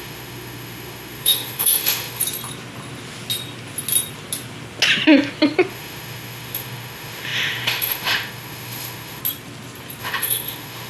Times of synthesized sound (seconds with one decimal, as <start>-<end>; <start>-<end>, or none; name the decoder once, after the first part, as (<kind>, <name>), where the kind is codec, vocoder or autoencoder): 0.0-2.2 (autoencoder, DAC-VAE); 5.7-9.2; 10.0-10.9